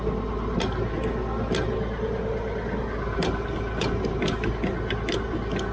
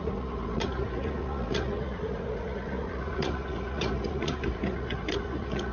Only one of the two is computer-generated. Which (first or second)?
second